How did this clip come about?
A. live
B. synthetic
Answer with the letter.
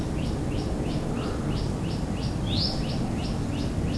A